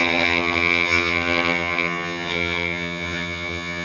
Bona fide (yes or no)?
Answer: no